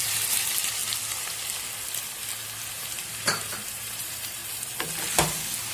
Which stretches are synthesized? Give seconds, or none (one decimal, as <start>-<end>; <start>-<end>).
0.0-0.8; 2.7-4.4